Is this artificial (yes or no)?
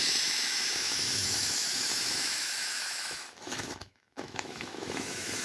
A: yes